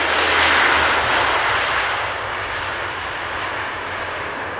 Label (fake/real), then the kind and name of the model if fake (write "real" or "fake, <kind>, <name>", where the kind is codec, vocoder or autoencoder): real